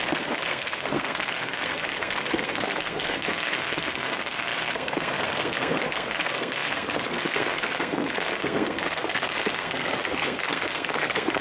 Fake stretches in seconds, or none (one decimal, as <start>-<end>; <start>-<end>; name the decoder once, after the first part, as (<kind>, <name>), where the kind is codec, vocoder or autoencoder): 0.0-11.4 (codec, SNAC)